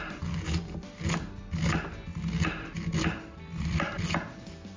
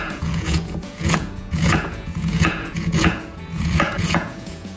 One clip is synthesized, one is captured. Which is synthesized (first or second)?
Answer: second